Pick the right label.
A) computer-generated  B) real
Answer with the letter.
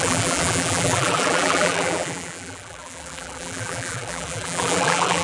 A